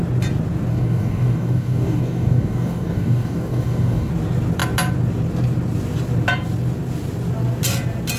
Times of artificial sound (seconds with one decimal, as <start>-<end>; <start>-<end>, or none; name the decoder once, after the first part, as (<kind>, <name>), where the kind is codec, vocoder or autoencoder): 0.7-4.1 (codec, DAC)